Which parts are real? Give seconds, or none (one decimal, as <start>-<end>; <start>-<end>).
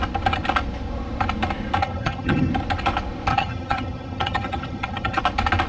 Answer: 0.0-1.8; 2.5-3.3; 5.2-5.7